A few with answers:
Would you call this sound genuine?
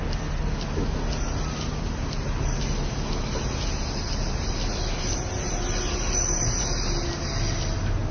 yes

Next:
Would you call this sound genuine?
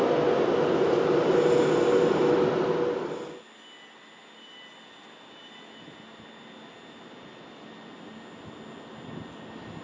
yes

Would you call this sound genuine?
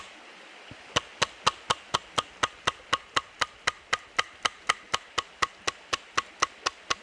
yes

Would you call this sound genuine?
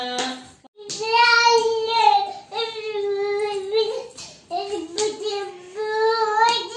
yes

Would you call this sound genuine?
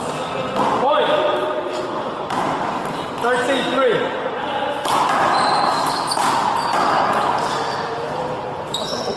yes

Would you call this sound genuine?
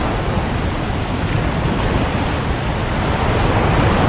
yes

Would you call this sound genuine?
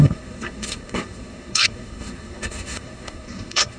no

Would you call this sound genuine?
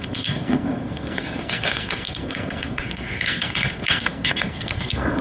no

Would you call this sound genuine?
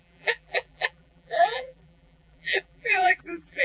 no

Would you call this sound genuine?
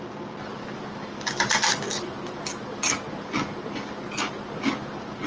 yes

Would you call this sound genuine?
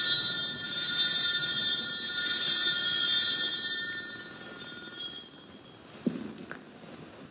yes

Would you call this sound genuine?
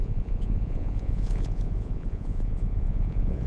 no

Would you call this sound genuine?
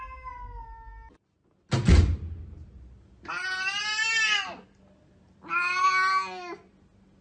yes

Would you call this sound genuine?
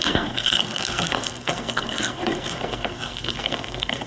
no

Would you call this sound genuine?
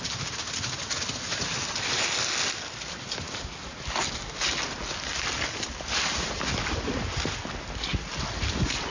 yes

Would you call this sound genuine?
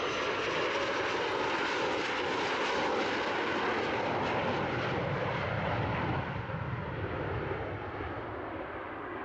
yes